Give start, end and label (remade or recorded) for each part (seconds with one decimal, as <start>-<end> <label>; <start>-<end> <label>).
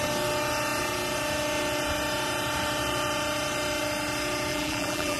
0.0-4.5 recorded; 4.5-5.2 remade